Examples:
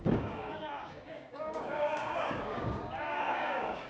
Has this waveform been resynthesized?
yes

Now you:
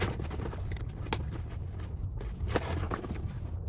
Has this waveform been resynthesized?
no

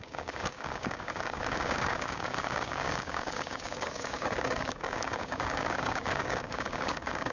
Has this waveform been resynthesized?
yes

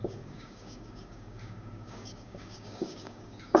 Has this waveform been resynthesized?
yes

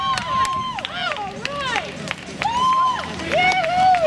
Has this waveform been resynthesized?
no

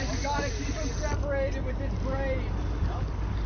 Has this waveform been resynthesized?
no